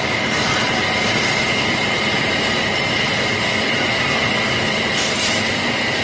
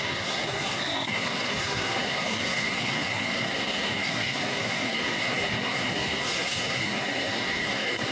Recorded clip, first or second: first